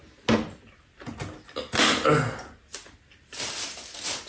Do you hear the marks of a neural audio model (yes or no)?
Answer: no